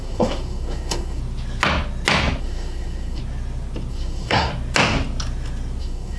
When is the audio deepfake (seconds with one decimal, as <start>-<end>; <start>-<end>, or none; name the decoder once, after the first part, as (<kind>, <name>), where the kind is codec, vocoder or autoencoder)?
0.0-1.2 (codec, SNAC); 2.4-3.2; 3.9-4.5; 5.8-6.2